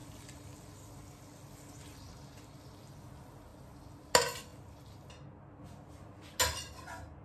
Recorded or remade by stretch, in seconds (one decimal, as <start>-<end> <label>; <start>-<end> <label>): 0.0-7.2 recorded